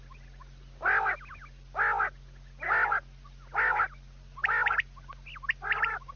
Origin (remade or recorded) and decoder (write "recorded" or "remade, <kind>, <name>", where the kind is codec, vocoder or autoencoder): recorded